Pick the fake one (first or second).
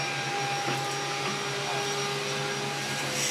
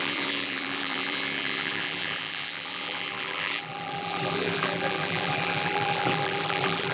second